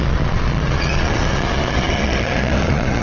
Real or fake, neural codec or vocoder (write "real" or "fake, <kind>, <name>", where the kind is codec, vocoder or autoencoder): fake, vocoder, Vocos